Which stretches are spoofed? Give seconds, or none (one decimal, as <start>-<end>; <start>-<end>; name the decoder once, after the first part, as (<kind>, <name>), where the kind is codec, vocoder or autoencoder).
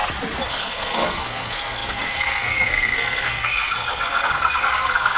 0.5-5.2 (codec, SNAC)